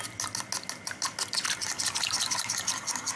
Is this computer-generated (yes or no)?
no